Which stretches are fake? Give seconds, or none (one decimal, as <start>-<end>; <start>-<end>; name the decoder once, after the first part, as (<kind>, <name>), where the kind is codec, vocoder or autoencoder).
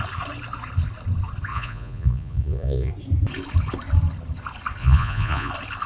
1.5-2.9 (vocoder, Vocos); 4.8-5.5